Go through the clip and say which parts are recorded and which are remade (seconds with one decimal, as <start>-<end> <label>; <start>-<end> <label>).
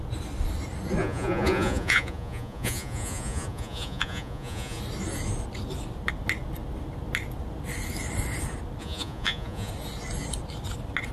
0.0-1.0 recorded; 1.0-4.8 remade; 4.8-8.8 recorded; 8.8-9.7 remade; 9.7-11.1 recorded